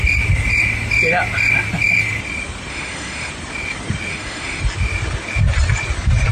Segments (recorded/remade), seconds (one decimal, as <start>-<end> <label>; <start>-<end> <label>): 0.0-2.7 recorded; 2.7-3.3 remade; 3.3-4.1 recorded; 4.1-4.6 remade; 4.6-6.3 recorded